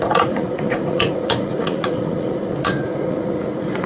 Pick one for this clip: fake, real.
fake